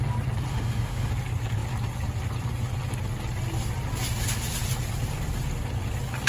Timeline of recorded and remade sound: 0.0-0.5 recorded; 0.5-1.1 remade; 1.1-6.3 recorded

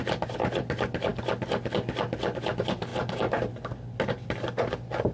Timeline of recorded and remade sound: 0.0-2.9 recorded; 2.9-3.5 remade; 3.5-5.1 recorded

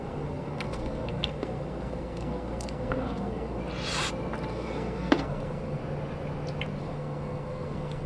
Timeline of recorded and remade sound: 0.0-3.6 remade; 3.6-4.5 recorded; 4.5-5.8 remade; 5.8-6.8 recorded; 6.8-8.1 remade

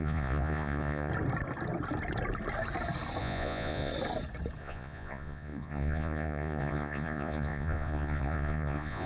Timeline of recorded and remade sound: 0.0-1.1 remade; 1.1-3.2 recorded; 3.2-3.9 remade; 3.9-4.6 recorded; 4.6-9.1 remade

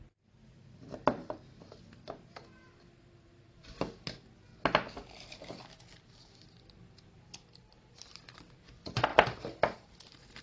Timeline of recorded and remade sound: 0.0-10.4 recorded

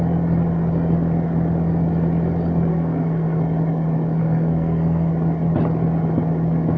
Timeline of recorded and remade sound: 0.0-2.7 recorded; 2.7-3.4 remade; 3.4-4.2 recorded; 4.2-5.1 remade; 5.1-6.8 recorded